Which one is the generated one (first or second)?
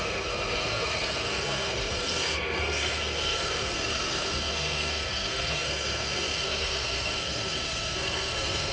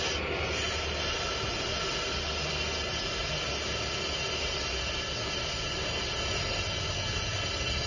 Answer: first